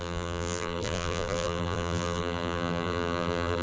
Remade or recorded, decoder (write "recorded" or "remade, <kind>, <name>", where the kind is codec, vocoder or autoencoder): remade, vocoder, BigVGAN v2